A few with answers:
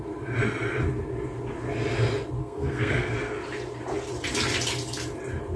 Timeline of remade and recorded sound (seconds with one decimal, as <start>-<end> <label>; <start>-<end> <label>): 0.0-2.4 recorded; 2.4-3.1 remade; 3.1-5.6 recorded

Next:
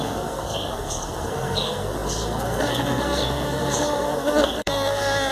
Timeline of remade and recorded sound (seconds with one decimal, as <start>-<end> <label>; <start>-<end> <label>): 0.0-5.3 remade

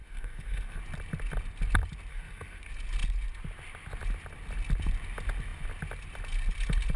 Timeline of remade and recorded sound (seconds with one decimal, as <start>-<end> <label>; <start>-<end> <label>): 0.0-0.8 remade; 0.8-2.1 recorded; 2.1-2.6 remade; 2.6-7.0 recorded

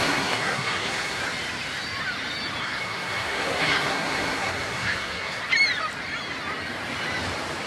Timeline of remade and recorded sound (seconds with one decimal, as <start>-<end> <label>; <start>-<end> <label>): 0.0-1.2 remade; 1.2-2.6 recorded; 2.6-5.4 remade; 5.4-7.7 recorded

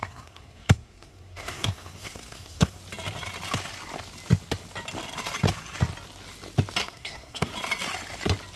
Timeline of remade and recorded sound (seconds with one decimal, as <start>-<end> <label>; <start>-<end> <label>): 0.0-2.8 remade; 2.8-6.8 recorded; 6.8-7.5 remade; 7.5-8.6 recorded

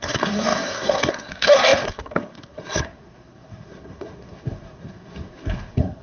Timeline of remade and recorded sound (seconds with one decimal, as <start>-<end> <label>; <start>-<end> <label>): 0.0-6.0 remade

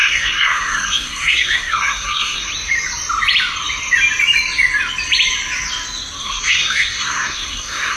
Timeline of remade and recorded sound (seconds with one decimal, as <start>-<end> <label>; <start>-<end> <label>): 0.0-2.5 remade; 2.5-6.2 recorded; 6.2-8.0 remade

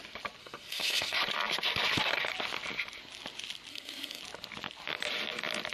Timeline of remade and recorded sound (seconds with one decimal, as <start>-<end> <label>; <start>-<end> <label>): 0.0-0.4 recorded; 0.4-1.2 remade; 1.2-3.7 recorded; 3.7-4.2 remade; 4.2-5.7 recorded